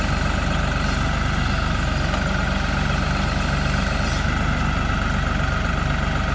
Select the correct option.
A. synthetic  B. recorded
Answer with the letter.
B